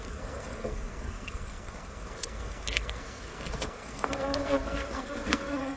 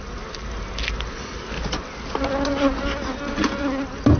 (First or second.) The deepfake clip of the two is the first